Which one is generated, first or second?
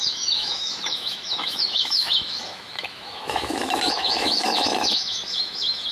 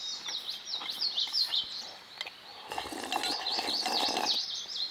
first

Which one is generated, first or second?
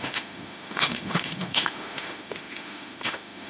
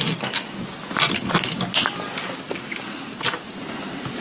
first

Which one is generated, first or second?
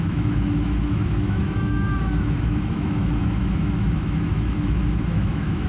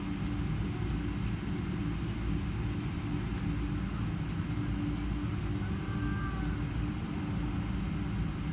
first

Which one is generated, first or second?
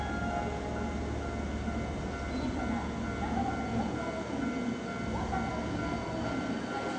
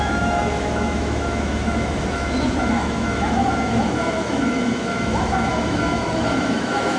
second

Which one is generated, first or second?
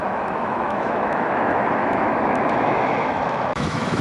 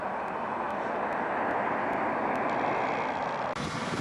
first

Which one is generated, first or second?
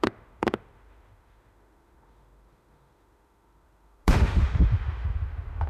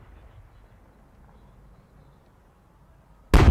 first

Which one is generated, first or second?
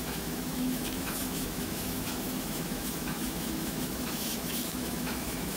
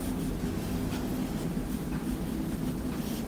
first